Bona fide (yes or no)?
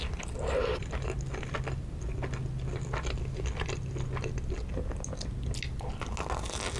yes